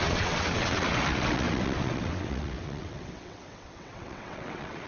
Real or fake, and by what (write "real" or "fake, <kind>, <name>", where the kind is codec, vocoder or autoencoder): fake, vocoder, WaveNeXt